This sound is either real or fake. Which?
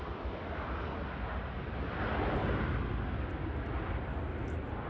real